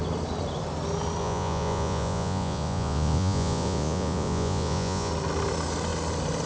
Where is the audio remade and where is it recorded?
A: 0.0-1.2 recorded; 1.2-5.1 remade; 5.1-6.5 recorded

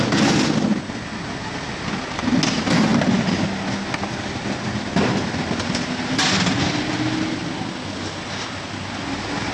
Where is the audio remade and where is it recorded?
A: 0.0-9.5 recorded

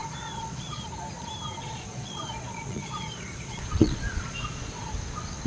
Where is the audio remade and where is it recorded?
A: 0.0-0.8 remade; 0.8-1.6 recorded; 1.6-4.9 remade; 4.9-5.5 recorded